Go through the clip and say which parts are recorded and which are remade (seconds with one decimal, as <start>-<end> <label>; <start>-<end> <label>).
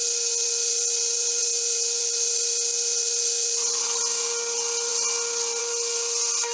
0.0-6.5 recorded